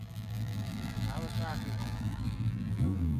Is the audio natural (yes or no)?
no